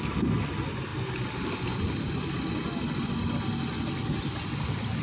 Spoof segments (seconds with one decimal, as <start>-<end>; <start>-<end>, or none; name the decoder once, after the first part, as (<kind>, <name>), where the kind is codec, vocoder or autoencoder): none